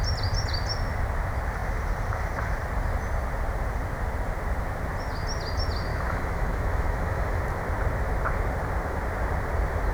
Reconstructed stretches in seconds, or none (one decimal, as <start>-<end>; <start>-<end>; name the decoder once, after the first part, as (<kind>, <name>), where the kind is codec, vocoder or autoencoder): 5.9-7.4 (autoencoder, DAC-VAE)